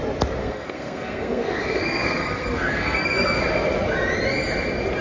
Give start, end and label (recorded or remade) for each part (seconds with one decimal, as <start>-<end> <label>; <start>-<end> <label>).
0.0-0.4 recorded; 0.4-3.4 remade; 3.4-5.0 recorded